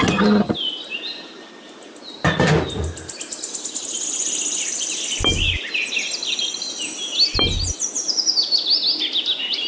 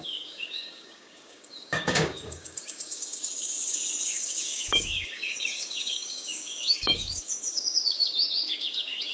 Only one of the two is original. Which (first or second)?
first